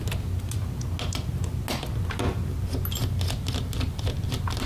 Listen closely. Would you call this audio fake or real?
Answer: real